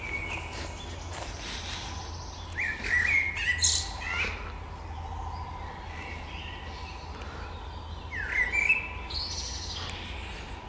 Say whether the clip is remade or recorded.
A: recorded